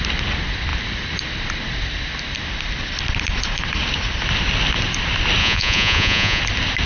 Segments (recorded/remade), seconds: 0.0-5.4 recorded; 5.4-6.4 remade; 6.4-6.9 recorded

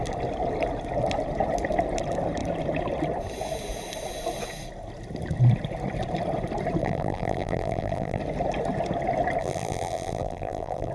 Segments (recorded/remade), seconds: 0.0-6.8 recorded; 6.8-8.2 remade; 8.2-9.4 recorded; 9.4-10.9 remade

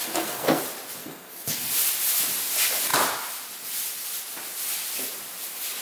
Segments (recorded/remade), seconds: 0.0-0.6 remade; 0.6-1.0 recorded; 1.0-1.7 remade; 1.7-5.8 recorded

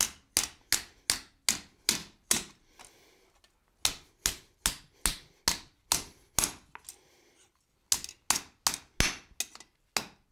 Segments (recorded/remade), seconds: 0.0-2.0 recorded; 2.0-2.8 remade; 2.8-10.3 recorded

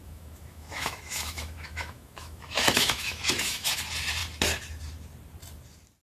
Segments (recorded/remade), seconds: 0.0-3.7 remade; 3.7-6.1 recorded

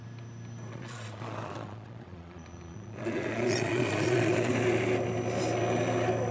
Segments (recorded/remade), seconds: 0.0-0.7 recorded; 0.7-4.5 remade; 4.5-6.3 recorded

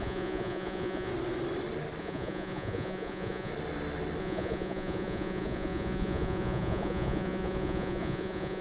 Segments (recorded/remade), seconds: 0.0-1.1 remade; 1.1-2.0 recorded; 2.0-3.5 remade; 3.5-4.2 recorded; 4.2-8.6 remade

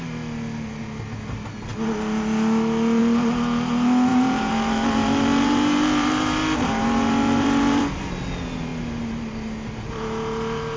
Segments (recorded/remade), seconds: 0.0-4.1 recorded; 4.1-7.8 remade; 7.8-10.8 recorded